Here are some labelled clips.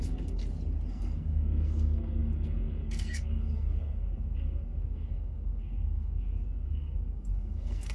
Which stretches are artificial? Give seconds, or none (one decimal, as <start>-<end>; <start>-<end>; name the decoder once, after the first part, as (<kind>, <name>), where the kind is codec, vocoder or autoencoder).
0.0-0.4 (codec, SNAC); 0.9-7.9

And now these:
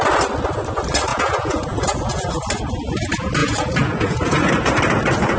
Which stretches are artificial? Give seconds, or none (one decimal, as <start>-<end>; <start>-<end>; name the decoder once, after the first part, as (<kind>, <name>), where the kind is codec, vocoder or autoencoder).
1.1-2.3 (vocoder, Vocos); 3.4-4.5

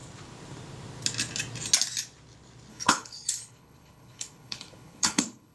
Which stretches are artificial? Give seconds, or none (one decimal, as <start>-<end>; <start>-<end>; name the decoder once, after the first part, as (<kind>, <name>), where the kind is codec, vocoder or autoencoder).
2.7-5.5 (codec, HILCodec)

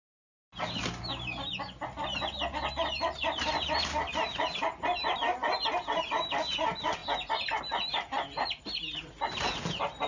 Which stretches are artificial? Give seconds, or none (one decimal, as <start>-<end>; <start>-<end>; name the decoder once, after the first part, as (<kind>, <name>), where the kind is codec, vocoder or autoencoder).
none